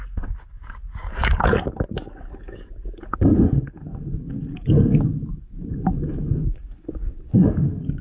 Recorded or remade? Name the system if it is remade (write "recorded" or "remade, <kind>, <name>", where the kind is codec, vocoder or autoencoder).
remade, codec, DAC